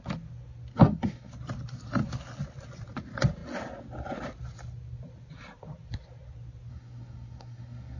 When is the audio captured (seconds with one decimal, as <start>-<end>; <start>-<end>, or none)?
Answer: 0.0-0.7; 1.3-6.7